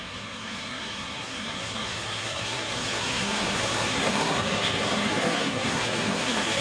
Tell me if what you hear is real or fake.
fake